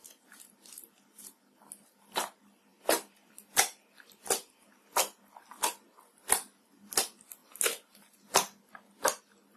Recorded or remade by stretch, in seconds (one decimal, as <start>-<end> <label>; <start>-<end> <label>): 0.0-9.6 recorded